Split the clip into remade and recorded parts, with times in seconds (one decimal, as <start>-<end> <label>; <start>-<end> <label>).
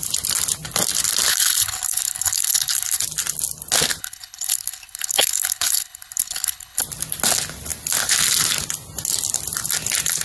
0.0-1.3 recorded; 1.3-3.0 remade; 3.0-4.0 recorded; 4.0-6.8 remade; 6.8-10.2 recorded